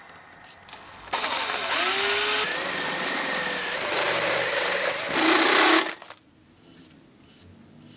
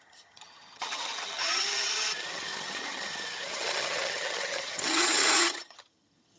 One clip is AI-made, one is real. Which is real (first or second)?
first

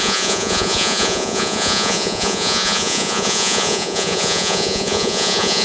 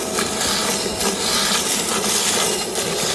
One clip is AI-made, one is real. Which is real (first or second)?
second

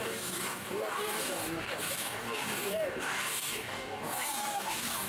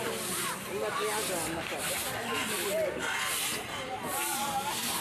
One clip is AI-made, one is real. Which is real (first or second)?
second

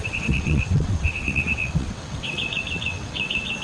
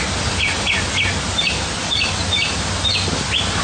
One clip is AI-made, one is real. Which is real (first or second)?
second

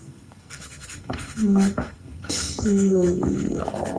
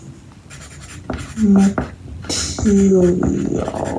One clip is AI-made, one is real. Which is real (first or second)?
second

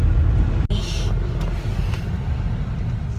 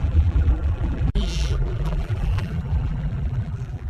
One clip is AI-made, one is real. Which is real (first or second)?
first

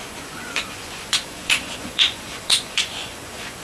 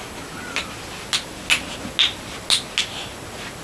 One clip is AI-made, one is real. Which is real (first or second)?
second